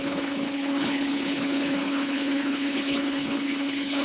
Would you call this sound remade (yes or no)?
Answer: yes